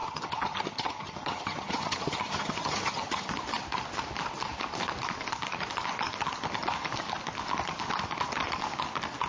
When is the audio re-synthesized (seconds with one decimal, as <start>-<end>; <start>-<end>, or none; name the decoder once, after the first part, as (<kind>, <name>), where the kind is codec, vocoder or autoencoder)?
0.0-3.3 (vocoder, HiFi-GAN)